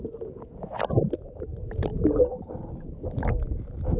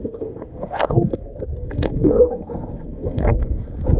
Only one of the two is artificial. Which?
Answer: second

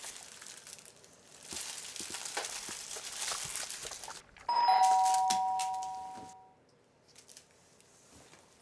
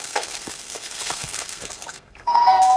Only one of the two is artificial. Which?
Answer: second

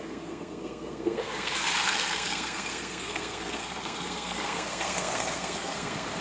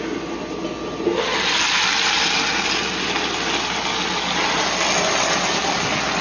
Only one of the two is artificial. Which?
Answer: first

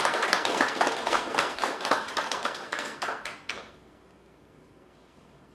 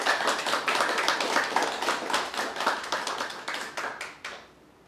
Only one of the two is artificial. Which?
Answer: first